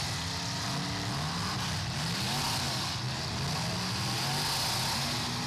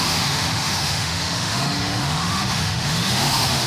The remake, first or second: second